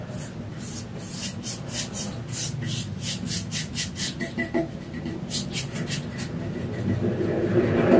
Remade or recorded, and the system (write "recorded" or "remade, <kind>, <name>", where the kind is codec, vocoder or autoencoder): recorded